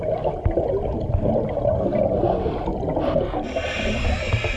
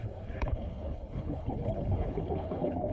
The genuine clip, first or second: first